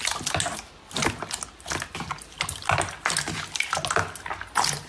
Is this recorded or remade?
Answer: recorded